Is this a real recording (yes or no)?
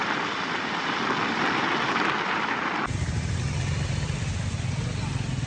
yes